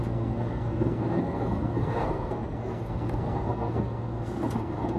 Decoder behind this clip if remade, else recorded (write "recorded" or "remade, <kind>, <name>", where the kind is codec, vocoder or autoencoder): remade, codec, SNAC